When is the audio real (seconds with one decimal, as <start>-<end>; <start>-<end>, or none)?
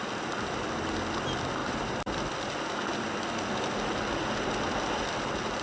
0.0-1.6; 2.2-5.6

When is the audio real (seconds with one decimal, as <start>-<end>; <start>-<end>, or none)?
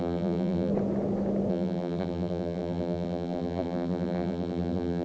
0.7-1.5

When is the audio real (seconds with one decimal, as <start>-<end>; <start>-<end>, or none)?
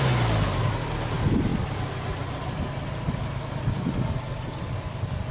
0.0-5.3